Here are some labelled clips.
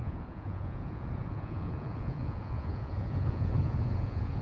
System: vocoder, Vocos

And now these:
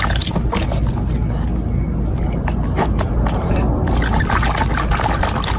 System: none